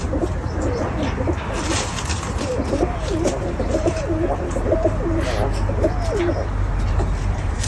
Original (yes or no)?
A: yes